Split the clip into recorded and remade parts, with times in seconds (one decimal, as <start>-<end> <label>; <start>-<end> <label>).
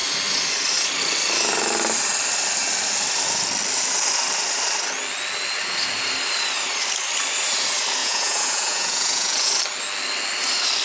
0.0-8.0 recorded; 8.0-9.5 remade; 9.5-10.8 recorded